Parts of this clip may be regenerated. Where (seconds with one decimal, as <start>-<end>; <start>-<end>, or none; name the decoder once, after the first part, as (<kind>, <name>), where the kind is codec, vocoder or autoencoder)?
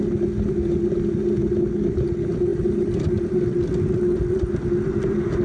none